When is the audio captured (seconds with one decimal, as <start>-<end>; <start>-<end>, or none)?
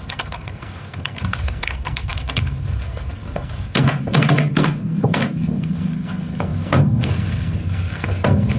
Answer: none